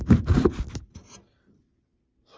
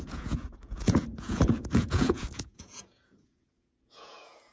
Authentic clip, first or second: first